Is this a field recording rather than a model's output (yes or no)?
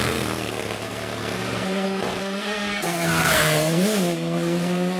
no